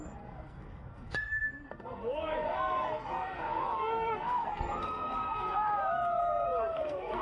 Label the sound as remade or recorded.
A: remade